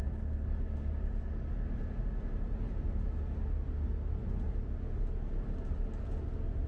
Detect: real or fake real